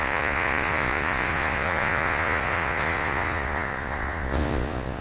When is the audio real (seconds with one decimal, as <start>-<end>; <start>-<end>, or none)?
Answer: none